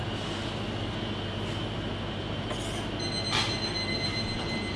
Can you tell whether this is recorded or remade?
recorded